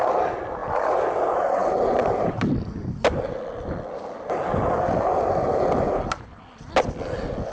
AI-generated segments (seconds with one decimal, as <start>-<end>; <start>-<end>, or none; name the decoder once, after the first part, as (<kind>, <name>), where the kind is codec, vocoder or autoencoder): none